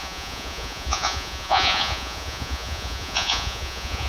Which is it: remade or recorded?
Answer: remade